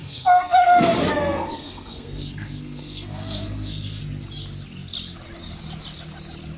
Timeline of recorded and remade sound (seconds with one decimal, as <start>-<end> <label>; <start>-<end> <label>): 0.0-4.0 remade; 4.0-6.6 recorded